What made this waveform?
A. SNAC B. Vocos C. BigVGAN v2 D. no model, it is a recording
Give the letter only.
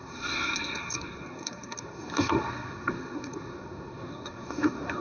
A